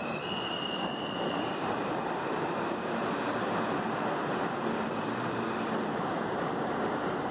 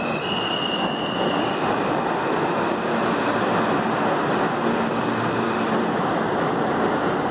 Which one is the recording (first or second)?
second